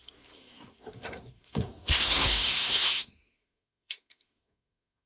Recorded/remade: remade